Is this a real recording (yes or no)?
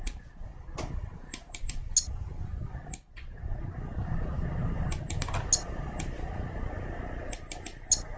yes